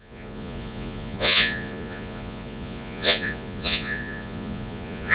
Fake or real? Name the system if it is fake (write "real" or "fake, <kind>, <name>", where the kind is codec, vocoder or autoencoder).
fake, vocoder, Vocos